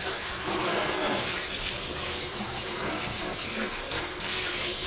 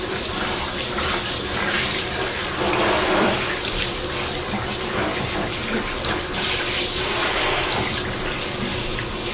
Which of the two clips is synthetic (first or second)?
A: first